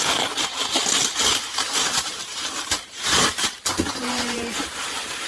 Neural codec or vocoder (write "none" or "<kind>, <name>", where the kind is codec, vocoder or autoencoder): vocoder, BigVGAN v2